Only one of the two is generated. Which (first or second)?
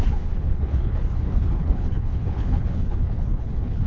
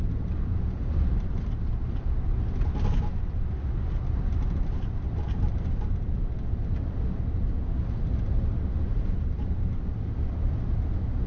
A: first